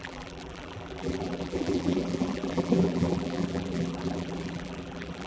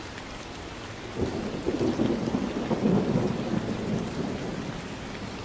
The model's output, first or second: first